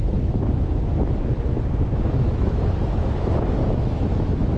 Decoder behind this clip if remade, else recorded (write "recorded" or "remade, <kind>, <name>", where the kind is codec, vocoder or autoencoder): remade, autoencoder, DAC-VAE